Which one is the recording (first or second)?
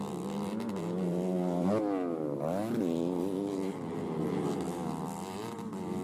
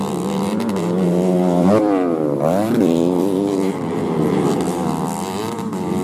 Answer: first